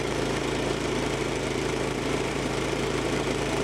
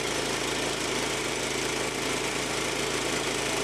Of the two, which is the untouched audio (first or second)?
second